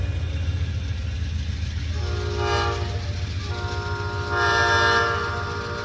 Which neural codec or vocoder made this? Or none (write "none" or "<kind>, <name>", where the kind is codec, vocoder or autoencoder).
none